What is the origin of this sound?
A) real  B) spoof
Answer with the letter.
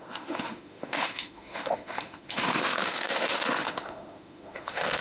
B